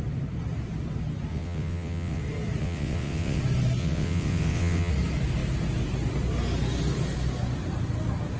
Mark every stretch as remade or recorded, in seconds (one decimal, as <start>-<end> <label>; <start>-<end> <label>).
0.0-1.3 recorded; 1.3-2.2 remade; 2.2-2.6 recorded; 2.6-3.4 remade; 3.4-3.8 recorded; 3.8-4.9 remade; 4.9-8.4 recorded